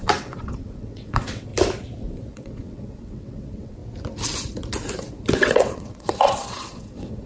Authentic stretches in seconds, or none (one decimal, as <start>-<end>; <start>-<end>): 1.5-2.3; 3.8-5.4